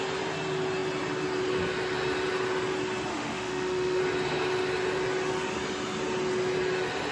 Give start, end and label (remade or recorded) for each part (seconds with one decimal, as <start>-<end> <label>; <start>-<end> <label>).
0.0-3.1 recorded; 3.1-4.0 remade; 4.0-7.1 recorded